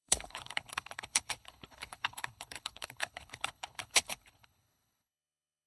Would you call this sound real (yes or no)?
no